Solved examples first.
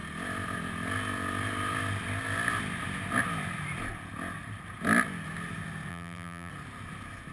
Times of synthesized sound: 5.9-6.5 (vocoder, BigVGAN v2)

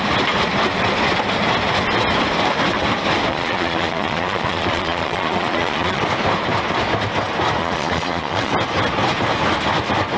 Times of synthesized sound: 3.3-6.0 (vocoder, Vocos); 7.6-8.5

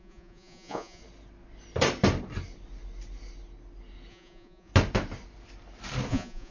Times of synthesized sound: 0.0-1.0 (vocoder, Vocos); 4.1-4.7; 6.1-6.5

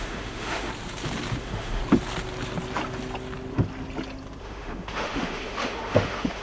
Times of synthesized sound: 0.0-0.7 (autoencoder, DAC-VAE); 1.4-1.8; 4.4-6.4

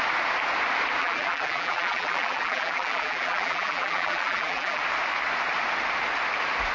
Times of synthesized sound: 1.0-4.8 (vocoder, BigVGAN v2)